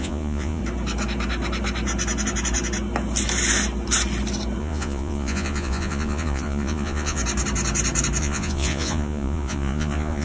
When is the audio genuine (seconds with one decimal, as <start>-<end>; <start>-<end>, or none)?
0.6-4.6; 7.2-8.2